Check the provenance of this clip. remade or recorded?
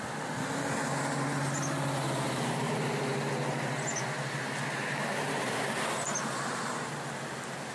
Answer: recorded